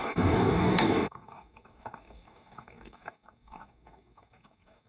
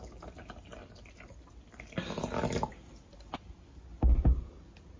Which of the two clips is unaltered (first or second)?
second